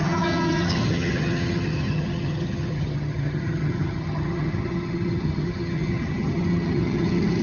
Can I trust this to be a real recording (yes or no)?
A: no